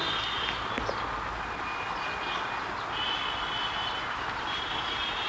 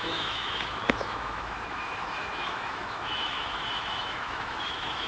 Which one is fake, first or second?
second